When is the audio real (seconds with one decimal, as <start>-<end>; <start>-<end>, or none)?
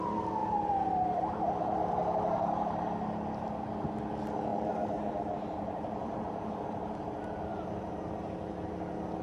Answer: 0.0-0.4; 1.7-4.5; 6.6-7.5; 8.1-9.2